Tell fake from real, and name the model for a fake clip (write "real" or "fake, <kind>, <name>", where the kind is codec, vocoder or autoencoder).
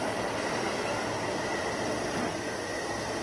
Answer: real